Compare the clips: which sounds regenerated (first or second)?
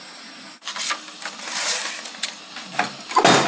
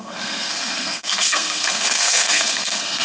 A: second